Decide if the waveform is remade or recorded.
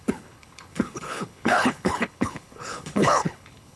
remade